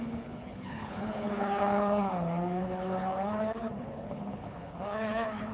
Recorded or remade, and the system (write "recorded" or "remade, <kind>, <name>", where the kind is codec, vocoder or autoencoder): remade, codec, HILCodec